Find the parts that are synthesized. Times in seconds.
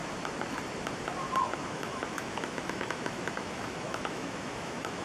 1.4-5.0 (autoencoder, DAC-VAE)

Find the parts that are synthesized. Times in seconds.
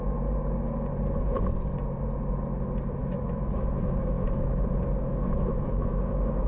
3.0-4.6 (autoencoder, DAC-VAE); 5.5-6.5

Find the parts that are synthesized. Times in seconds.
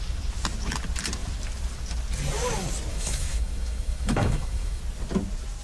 2.9-4.8 (autoencoder, DAC-VAE)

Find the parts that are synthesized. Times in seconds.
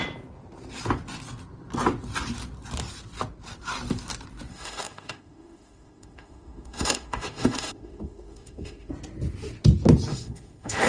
4.5-8.9 (autoencoder, DAC-VAE); 10.1-10.9